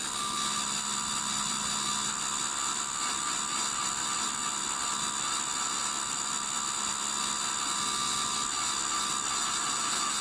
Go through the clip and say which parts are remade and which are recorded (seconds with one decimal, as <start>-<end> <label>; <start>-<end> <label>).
0.0-10.2 recorded